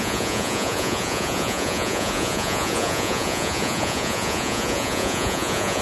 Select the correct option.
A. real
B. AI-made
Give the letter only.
B